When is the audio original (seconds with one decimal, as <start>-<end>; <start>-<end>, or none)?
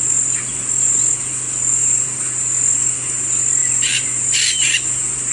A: 0.0-5.3